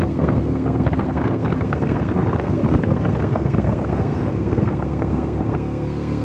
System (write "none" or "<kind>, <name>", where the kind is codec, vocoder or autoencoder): codec, SNAC